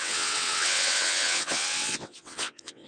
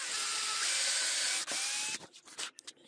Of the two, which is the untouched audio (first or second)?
second